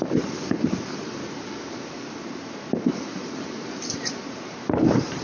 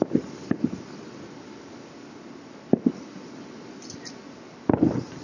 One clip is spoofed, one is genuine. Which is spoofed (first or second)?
first